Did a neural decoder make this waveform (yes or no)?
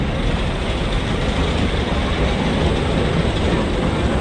no